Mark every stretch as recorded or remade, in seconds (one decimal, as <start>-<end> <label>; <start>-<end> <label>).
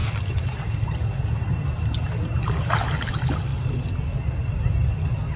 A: 0.0-3.5 remade; 3.5-5.4 recorded